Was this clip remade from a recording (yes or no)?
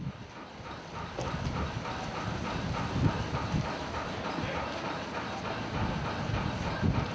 no